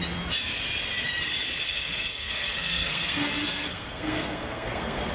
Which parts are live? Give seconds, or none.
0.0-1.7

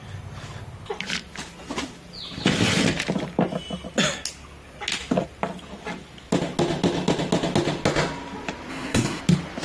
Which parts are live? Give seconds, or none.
0.0-8.7; 9.2-9.6

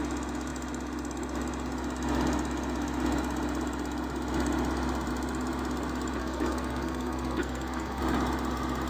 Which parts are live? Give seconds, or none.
0.0-6.2; 8.0-8.9

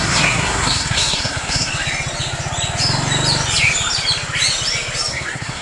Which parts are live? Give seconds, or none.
1.7-5.1